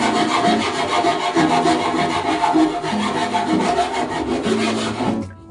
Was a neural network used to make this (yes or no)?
no